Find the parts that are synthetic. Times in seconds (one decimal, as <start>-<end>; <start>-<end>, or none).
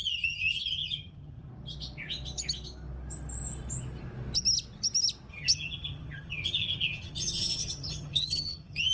0.0-1.5; 5.3-8.9